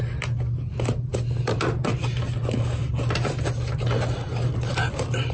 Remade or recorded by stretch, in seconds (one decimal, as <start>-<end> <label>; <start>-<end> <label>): 0.0-5.3 recorded